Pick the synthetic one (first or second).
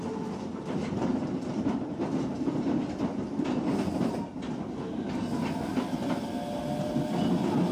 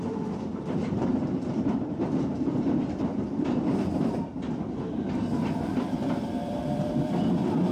second